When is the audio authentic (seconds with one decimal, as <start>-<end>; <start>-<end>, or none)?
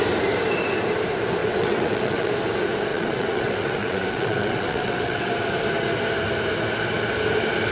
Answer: 0.0-1.4; 2.3-2.9; 5.3-7.7